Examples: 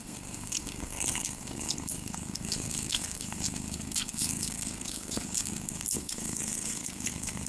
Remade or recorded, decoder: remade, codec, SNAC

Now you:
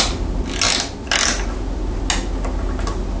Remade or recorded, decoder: recorded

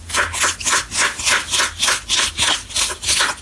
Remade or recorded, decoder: recorded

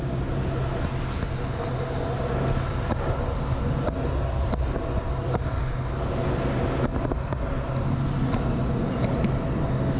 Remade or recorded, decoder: recorded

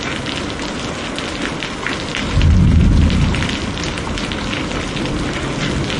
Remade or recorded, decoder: recorded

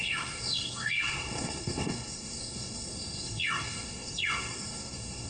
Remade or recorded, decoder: remade, codec, SNAC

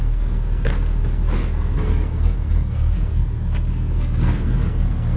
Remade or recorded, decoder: remade, codec, SNAC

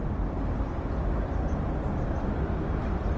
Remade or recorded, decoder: recorded